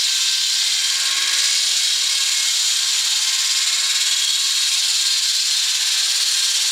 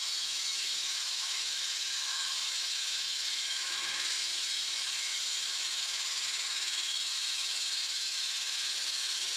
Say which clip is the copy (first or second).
second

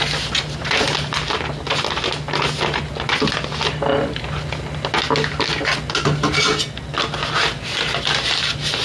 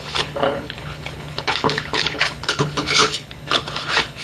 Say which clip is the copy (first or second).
second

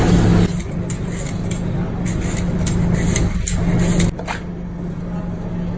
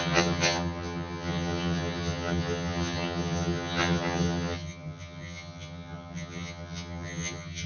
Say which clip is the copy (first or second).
second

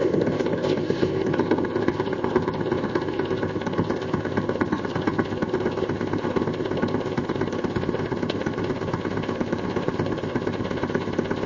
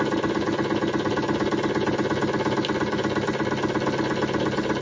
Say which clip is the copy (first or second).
first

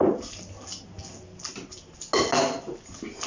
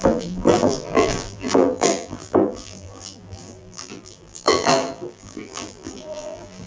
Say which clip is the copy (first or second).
second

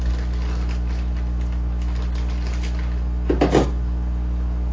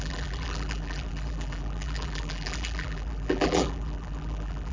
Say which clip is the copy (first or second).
second